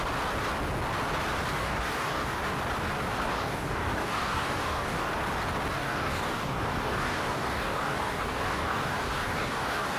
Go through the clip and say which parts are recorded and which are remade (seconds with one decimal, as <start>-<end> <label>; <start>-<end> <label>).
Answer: 0.0-1.5 recorded; 1.5-2.4 remade; 2.4-3.1 recorded; 3.1-5.1 remade; 5.1-5.7 recorded; 5.7-10.0 remade